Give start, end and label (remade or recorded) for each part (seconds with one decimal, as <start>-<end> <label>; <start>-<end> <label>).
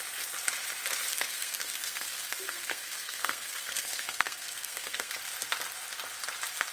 0.0-1.1 recorded; 1.1-5.1 remade; 5.1-6.7 recorded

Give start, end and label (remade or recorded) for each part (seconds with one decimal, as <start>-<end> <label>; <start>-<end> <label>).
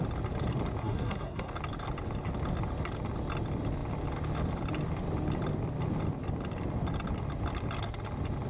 0.0-0.8 recorded; 0.8-1.5 remade; 1.5-8.5 recorded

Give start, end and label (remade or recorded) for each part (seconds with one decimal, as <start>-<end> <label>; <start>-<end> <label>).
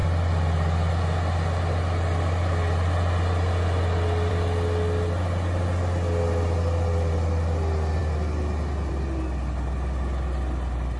0.0-11.0 recorded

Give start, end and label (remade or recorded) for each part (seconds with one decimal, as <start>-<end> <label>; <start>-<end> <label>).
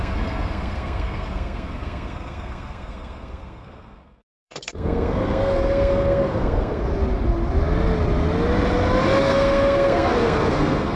0.0-6.9 remade; 6.9-9.2 recorded; 9.2-11.0 remade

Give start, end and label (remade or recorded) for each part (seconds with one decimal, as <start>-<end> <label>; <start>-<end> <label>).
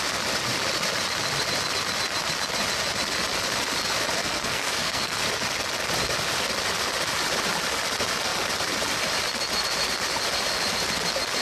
0.0-4.2 recorded; 4.2-5.2 remade; 5.2-11.4 recorded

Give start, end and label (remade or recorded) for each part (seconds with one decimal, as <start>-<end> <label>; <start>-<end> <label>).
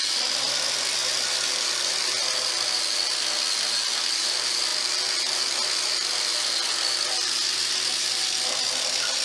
0.0-9.2 recorded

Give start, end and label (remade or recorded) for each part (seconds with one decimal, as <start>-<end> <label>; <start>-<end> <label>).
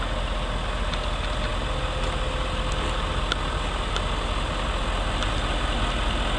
0.0-6.4 recorded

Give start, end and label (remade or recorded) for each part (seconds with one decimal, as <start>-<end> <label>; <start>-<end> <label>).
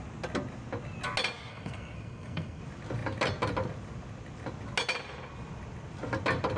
0.0-1.5 recorded; 1.5-2.6 remade; 2.6-6.6 recorded